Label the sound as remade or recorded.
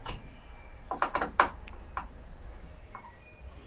recorded